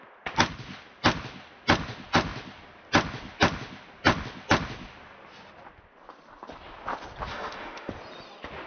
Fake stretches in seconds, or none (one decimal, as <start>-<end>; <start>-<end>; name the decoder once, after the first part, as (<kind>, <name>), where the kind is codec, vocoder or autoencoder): 7.3-7.9 (autoencoder, DAC-VAE)